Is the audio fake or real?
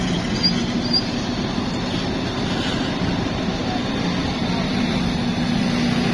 real